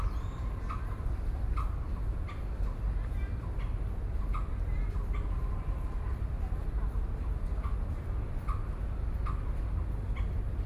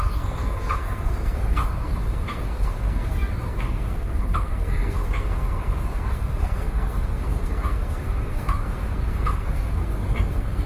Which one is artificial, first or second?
second